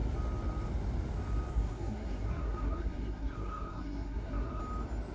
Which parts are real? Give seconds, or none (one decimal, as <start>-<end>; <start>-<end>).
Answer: 0.0-1.5; 4.6-5.1